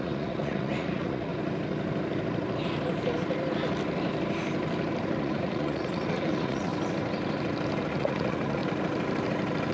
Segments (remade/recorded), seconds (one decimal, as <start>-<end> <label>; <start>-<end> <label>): 0.0-1.3 remade; 1.3-5.2 recorded; 5.2-6.7 remade; 6.7-7.9 recorded; 7.9-8.6 remade; 8.6-9.7 recorded